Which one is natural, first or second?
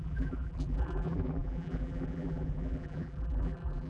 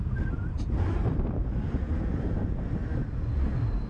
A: second